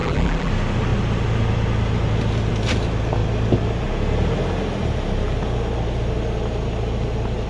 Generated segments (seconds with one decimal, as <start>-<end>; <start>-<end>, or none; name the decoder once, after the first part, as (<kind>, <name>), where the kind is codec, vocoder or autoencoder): 0.0-0.5 (vocoder, BigVGAN v2)